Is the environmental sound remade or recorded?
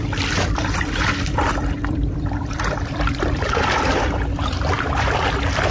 remade